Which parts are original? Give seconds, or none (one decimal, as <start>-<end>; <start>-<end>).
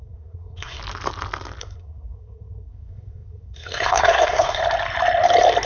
0.8-1.6; 4.6-5.7